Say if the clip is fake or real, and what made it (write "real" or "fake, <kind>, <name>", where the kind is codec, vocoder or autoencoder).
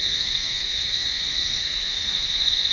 fake, codec, SNAC